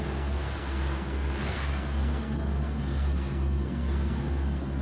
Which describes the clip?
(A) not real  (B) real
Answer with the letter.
A